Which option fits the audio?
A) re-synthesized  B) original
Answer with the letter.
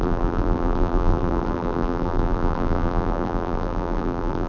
A